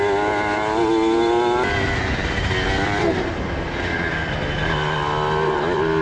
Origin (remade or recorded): recorded